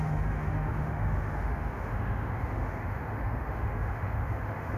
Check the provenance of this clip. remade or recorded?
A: remade